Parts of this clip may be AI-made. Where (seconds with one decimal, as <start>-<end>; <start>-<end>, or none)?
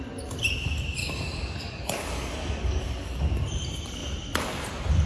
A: 1.0-3.2